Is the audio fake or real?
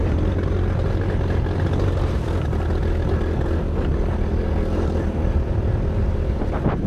real